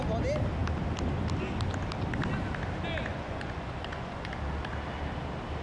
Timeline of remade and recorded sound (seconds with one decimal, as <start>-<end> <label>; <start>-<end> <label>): 0.0-3.1 recorded; 3.1-4.3 remade; 4.3-5.6 recorded